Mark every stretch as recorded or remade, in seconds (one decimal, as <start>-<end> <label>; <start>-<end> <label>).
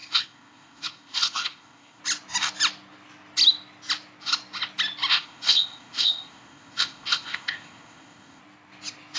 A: 0.0-2.0 remade; 2.0-5.1 recorded; 5.1-8.4 remade; 8.4-9.2 recorded